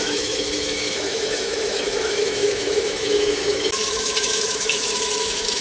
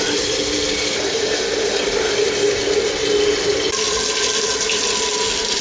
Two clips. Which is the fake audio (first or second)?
first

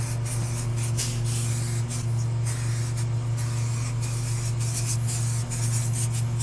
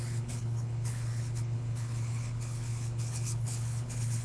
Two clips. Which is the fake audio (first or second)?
second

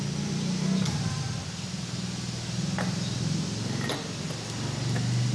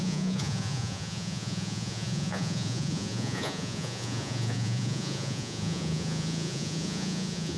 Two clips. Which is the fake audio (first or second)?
second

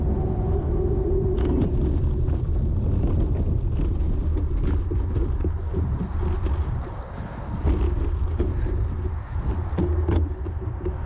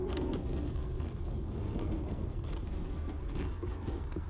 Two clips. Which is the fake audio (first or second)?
second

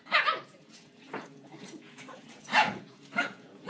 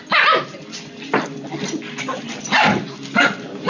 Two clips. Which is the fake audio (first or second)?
first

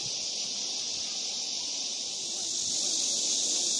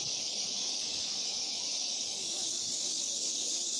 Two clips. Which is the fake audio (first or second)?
second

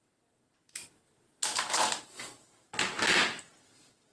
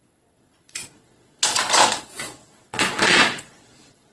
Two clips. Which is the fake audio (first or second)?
second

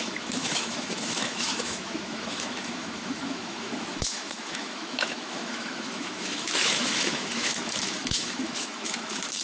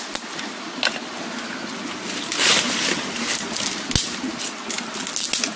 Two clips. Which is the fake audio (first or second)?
first